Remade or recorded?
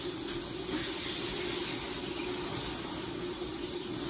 recorded